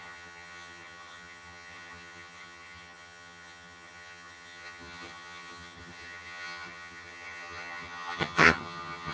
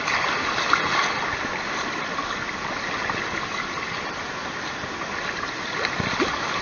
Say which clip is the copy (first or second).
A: first